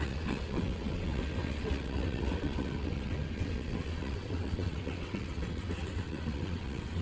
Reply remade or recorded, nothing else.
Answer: remade